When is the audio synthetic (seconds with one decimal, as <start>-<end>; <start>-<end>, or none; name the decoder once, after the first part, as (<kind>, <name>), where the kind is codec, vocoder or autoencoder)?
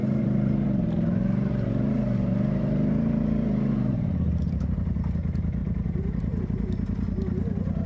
0.0-4.5 (vocoder, BigVGAN v2); 5.6-6.4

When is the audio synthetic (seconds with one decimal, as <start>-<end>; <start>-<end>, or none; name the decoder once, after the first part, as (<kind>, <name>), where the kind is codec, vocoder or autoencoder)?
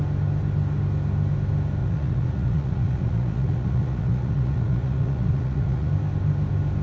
1.8-5.9 (vocoder, Vocos)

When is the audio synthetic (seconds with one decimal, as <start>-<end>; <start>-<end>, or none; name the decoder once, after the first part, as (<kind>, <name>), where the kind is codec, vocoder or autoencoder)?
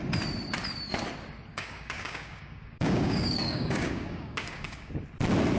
1.5-4.9 (codec, DAC)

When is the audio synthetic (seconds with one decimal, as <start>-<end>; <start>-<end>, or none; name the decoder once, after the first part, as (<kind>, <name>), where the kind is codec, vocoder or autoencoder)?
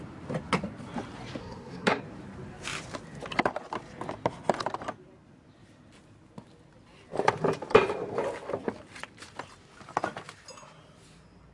1.4-2.0 (codec, SNAC)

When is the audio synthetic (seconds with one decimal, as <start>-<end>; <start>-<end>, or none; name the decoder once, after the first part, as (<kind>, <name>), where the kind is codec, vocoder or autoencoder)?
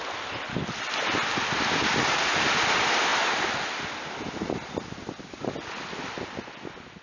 none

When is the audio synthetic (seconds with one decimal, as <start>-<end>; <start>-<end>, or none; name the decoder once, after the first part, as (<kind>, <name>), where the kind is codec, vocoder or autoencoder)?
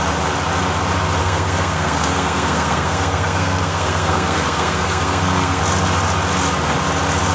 1.2-5.6 (codec, SNAC)